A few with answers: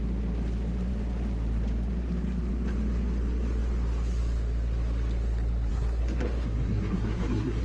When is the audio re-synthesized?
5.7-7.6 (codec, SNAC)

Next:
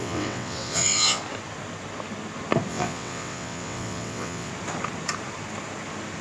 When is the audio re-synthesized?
0.0-1.2 (vocoder, WaveNeXt); 2.7-4.5

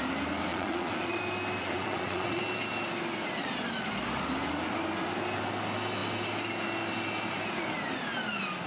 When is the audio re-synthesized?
0.5-1.2 (vocoder, Vocos); 1.6-2.4

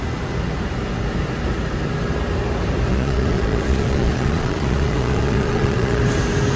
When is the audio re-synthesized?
2.9-6.0 (vocoder, Vocos)